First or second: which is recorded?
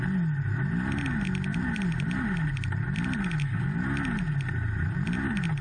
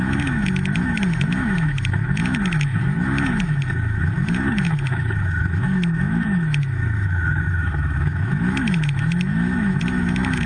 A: first